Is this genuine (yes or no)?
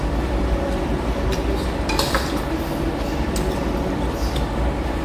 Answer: no